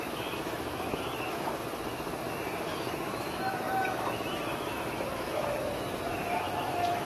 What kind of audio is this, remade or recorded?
remade